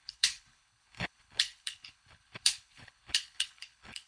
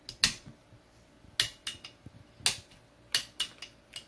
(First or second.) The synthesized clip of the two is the first